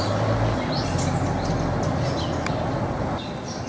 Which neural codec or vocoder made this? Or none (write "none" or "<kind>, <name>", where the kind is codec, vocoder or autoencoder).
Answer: none